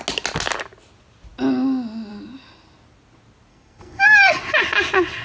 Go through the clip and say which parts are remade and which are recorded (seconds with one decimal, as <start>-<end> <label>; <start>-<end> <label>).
0.0-3.5 recorded; 3.5-4.4 remade; 4.4-5.2 recorded